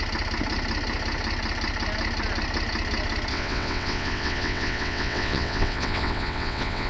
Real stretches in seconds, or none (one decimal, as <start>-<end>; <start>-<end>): 0.0-3.3